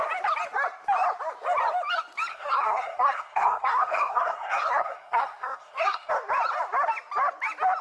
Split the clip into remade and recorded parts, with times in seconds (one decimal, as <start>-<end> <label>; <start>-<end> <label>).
0.0-2.3 recorded; 2.3-6.1 remade; 6.1-7.8 recorded